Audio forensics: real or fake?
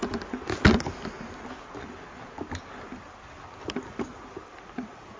real